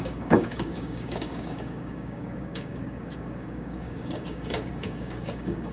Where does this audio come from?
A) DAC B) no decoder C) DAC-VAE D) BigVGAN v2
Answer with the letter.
A